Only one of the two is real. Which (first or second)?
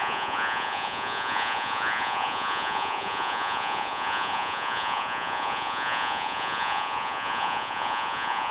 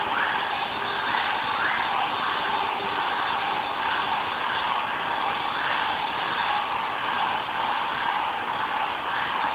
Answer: second